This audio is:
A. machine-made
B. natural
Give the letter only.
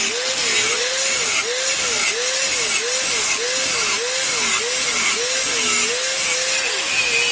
B